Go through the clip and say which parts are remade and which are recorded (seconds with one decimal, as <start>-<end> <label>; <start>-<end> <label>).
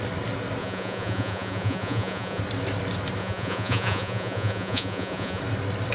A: 0.0-0.6 recorded; 0.6-2.4 remade; 2.4-3.2 recorded; 3.2-5.4 remade; 5.4-5.9 recorded